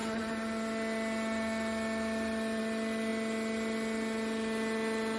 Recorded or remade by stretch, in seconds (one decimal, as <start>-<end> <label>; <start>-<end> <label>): 0.0-5.2 recorded